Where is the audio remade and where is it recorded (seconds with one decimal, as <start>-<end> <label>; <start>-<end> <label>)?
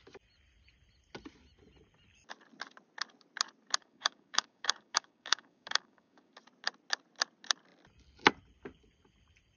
0.0-3.8 recorded; 3.8-6.3 remade; 6.3-9.6 recorded